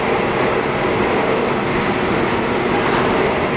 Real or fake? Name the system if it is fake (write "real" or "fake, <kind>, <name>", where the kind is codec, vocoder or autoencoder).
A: real